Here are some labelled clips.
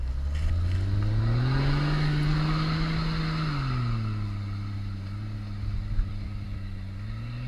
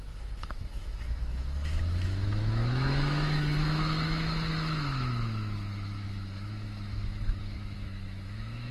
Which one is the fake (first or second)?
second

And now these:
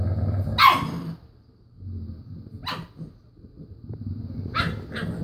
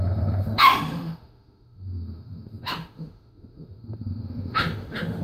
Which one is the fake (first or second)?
second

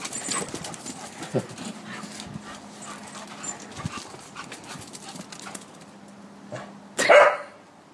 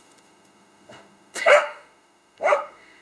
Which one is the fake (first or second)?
second